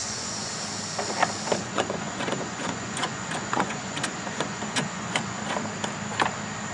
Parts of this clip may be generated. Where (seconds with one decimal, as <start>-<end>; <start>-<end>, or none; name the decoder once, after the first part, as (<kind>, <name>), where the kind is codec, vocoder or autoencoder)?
0.0-0.5 (vocoder, Vocos); 1.6-5.4